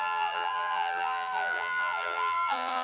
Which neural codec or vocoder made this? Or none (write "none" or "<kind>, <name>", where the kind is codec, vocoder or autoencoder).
vocoder, BigVGAN v2